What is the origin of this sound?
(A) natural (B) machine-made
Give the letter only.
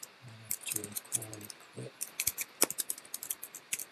A